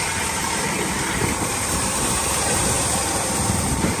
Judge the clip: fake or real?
fake